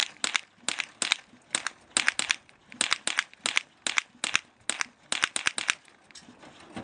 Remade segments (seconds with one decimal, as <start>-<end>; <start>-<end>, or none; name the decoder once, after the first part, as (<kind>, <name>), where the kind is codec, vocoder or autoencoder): none